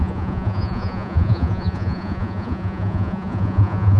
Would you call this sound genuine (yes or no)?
no